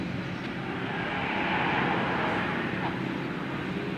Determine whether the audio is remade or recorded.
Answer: recorded